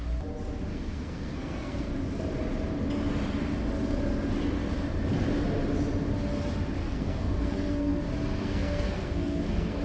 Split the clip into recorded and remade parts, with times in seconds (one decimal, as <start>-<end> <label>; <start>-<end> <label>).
0.0-0.7 recorded; 0.7-1.9 remade; 1.9-6.8 recorded; 6.8-8.0 remade; 8.0-8.4 recorded; 8.4-9.8 remade